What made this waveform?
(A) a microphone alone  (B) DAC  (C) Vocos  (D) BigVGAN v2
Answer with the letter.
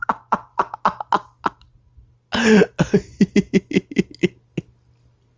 A